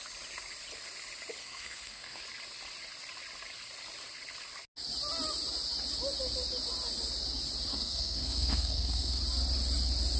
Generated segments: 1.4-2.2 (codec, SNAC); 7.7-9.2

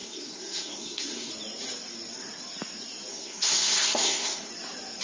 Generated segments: 0.0-1.3 (codec, SNAC); 3.1-4.5

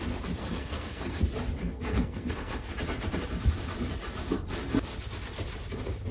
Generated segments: 0.4-1.2 (codec, SNAC); 1.6-2.7

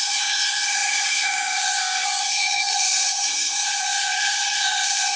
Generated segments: 0.0-5.2 (codec, SNAC)

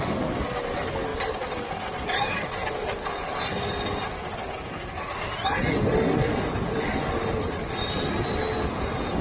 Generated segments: none

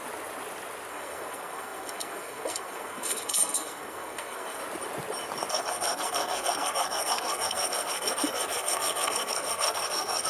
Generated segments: 0.9-4.6 (codec, SNAC); 5.5-10.3

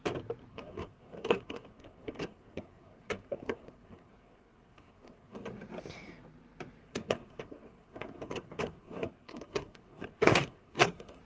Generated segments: 0.5-5.5 (codec, SNAC); 6.8-11.2